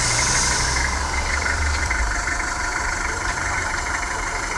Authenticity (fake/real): fake